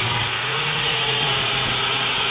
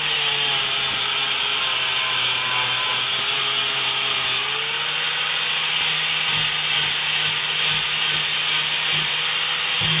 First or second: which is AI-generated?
first